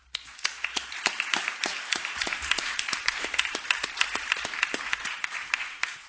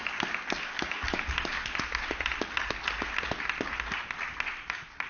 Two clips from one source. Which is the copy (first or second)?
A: first